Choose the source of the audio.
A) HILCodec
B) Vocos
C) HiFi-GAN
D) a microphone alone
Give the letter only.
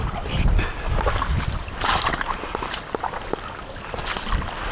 D